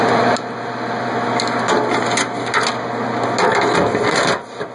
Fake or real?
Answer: real